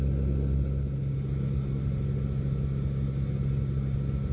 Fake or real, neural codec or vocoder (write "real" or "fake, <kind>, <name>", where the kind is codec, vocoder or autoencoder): real